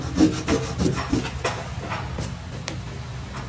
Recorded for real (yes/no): yes